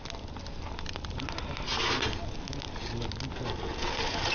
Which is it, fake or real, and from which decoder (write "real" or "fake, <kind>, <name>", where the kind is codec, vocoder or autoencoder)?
real